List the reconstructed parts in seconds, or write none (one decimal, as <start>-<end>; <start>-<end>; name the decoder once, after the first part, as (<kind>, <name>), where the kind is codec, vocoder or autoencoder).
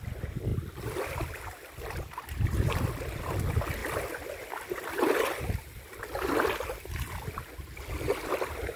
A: none